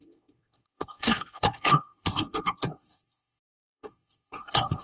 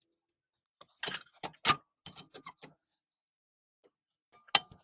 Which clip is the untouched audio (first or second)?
second